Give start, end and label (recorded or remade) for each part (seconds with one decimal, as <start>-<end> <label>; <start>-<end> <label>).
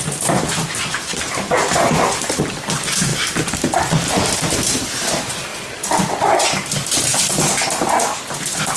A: 0.0-1.1 recorded; 1.1-2.4 remade; 2.4-3.1 recorded; 3.1-4.9 remade; 4.9-5.5 recorded; 5.5-7.5 remade; 7.5-8.8 recorded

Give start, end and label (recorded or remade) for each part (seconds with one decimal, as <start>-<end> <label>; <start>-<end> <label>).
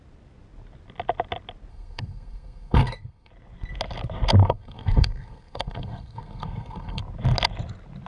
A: 0.0-1.7 recorded; 1.7-3.3 remade; 3.3-4.4 recorded; 4.4-7.0 remade; 7.0-8.1 recorded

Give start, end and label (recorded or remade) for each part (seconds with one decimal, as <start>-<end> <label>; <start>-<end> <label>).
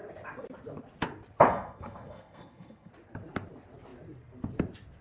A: 0.0-1.5 recorded; 1.5-2.9 remade; 2.9-5.0 recorded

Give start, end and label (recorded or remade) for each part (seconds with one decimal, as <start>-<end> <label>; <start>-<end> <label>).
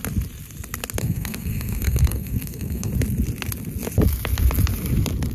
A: 0.0-1.0 recorded; 1.0-2.9 remade; 2.9-5.3 recorded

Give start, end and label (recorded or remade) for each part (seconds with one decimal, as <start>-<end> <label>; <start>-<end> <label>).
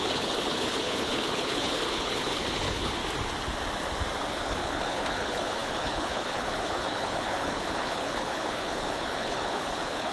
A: 0.0-3.0 remade; 3.0-4.3 recorded; 4.3-10.1 remade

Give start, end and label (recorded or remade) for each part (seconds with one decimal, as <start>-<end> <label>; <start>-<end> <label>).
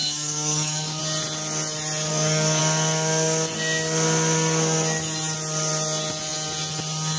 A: 0.0-1.0 remade; 1.0-2.1 recorded; 2.1-2.6 remade; 2.6-7.2 recorded